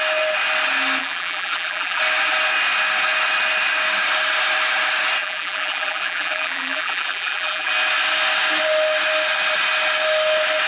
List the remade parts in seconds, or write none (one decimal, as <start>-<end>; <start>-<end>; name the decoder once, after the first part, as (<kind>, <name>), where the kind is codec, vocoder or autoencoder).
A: 1.0-2.0 (vocoder, BigVGAN v2); 5.2-7.7